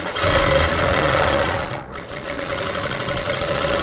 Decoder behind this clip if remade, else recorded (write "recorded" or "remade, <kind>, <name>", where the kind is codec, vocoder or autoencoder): remade, vocoder, Vocos